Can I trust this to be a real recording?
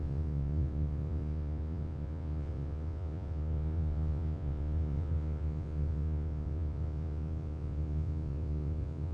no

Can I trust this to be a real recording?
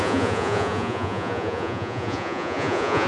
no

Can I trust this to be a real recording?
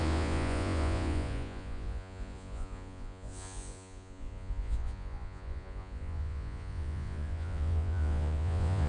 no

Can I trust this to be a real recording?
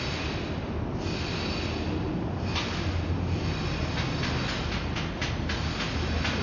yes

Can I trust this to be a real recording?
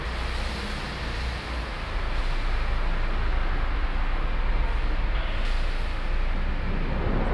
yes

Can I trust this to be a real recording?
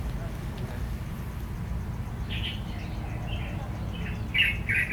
yes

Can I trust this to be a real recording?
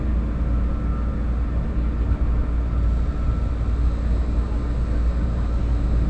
yes